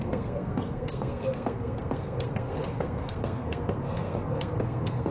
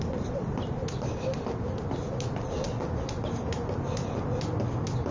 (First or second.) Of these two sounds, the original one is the second